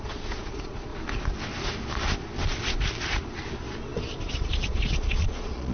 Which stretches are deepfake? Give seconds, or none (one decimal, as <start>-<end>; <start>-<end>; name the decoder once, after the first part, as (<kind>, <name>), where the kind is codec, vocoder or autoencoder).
0.0-0.9 (vocoder, Vocos); 4.3-5.7